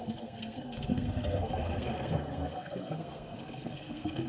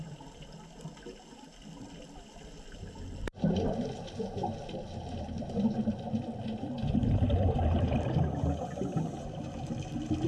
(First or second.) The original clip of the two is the second